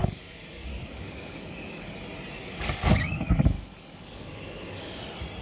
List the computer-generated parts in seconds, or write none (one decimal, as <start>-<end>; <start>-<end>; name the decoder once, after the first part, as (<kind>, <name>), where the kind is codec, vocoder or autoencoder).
0.0-1.9 (codec, DAC); 2.4-5.0